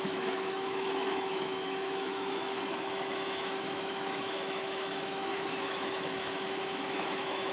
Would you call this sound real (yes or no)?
no